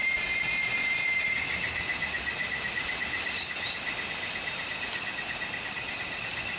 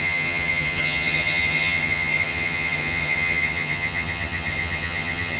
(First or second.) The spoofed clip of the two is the second